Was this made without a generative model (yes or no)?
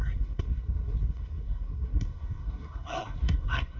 no